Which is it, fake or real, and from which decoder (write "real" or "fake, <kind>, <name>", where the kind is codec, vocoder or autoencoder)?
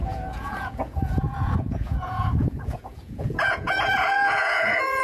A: fake, vocoder, Vocos